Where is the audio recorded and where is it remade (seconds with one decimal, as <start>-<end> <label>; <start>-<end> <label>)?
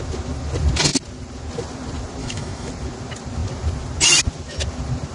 0.0-2.2 recorded; 2.2-2.7 remade; 2.7-5.1 recorded